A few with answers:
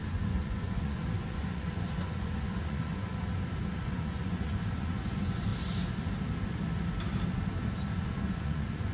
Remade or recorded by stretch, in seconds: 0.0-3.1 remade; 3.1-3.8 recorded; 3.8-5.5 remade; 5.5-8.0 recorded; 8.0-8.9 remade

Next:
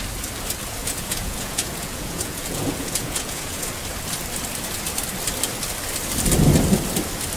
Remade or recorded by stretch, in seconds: 0.0-0.8 recorded; 0.8-3.7 remade; 3.7-7.4 recorded